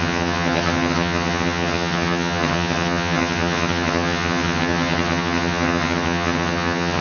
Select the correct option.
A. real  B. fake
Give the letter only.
B